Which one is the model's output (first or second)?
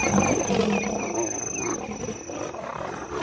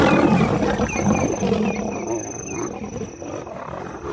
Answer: second